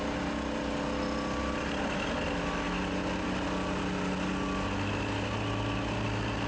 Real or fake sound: real